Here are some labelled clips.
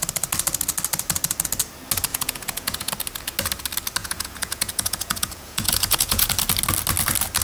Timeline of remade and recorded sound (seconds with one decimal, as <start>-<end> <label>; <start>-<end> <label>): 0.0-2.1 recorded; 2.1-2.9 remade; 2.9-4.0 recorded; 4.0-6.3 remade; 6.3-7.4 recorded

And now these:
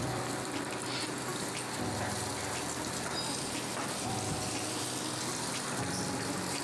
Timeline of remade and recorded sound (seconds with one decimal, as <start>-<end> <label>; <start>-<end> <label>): 0.0-1.3 remade; 1.3-5.1 recorded; 5.1-6.6 remade

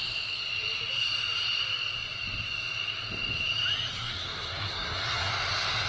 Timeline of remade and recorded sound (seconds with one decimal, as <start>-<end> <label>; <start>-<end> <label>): 0.0-3.9 recorded; 3.9-5.3 remade; 5.3-5.9 recorded